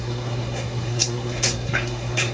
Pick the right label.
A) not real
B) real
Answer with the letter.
A